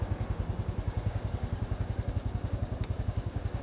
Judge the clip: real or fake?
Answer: fake